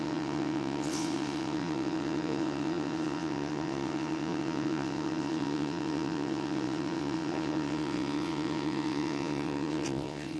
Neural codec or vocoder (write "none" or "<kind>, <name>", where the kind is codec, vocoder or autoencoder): vocoder, WaveNeXt